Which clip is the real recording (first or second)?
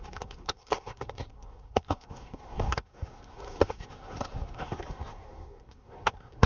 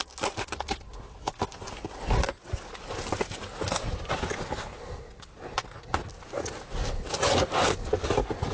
second